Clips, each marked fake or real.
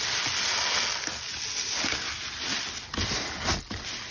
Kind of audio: real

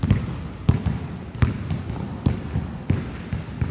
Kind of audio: real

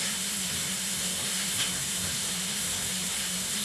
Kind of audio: fake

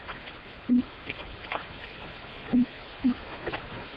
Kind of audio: fake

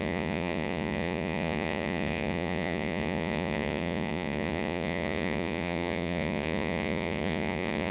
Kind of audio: fake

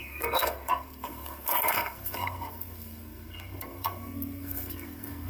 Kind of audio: fake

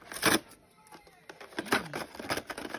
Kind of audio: real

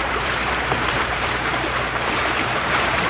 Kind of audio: fake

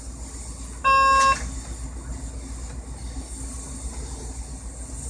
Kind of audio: real